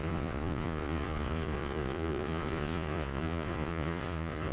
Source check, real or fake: fake